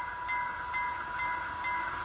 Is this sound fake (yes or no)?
no